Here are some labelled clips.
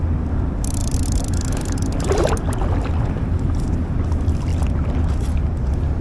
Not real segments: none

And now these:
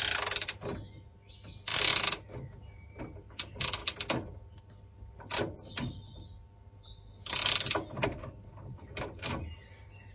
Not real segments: none

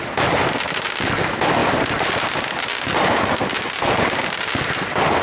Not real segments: none

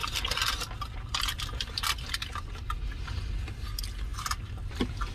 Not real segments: 0.0-2.3 (vocoder, BigVGAN v2); 4.1-4.6

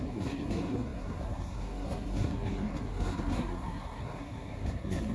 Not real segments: 0.0-5.1 (codec, SNAC)

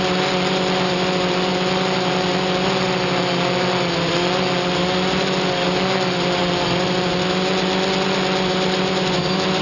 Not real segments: none

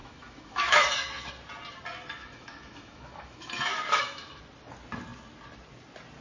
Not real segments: 0.0-1.3 (autoencoder, DAC-VAE); 2.2-4.4